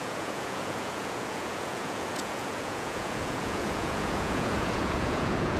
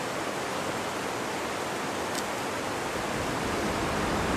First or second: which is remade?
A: first